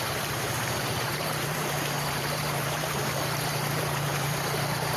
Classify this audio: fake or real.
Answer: fake